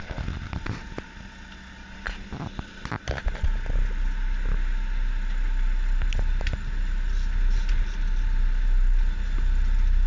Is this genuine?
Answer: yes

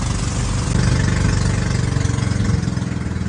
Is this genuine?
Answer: yes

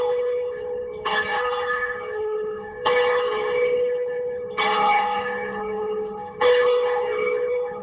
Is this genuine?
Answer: no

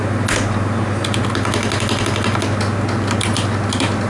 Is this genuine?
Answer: yes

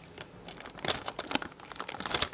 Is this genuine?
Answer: yes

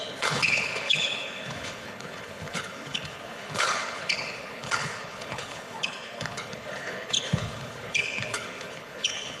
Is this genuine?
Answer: no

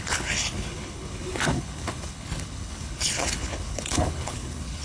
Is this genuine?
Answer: no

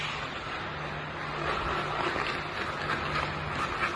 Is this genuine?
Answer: yes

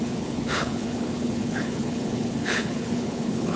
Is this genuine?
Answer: no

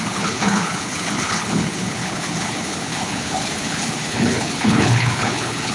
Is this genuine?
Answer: no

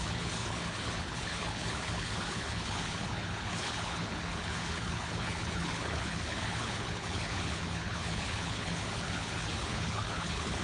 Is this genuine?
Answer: no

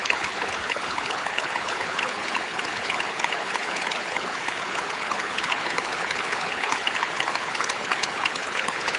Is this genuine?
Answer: no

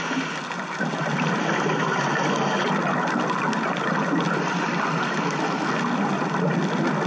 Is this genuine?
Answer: yes